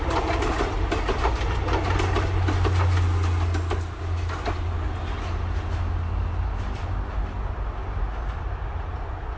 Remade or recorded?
recorded